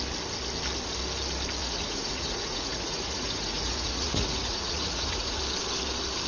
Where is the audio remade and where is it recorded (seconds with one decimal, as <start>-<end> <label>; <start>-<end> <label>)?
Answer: 0.0-1.6 recorded; 1.6-5.4 remade; 5.4-6.3 recorded